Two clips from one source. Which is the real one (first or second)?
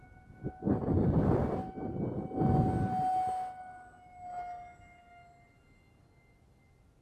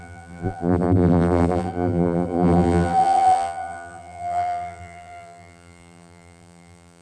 first